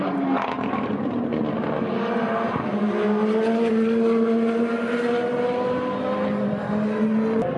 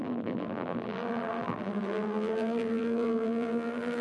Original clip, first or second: first